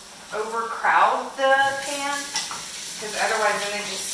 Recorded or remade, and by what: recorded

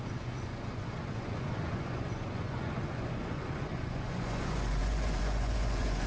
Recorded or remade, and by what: remade, vocoder, Vocos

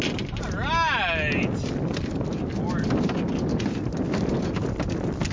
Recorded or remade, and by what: recorded